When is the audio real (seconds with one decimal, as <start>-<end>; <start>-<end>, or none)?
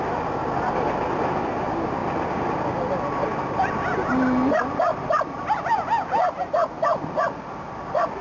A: 0.0-8.2